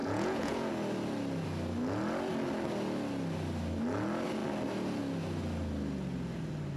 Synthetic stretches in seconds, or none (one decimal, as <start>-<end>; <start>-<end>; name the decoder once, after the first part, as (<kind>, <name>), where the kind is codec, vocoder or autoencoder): 0.0-0.7 (vocoder, Vocos)